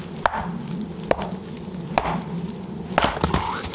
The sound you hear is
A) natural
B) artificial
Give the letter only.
A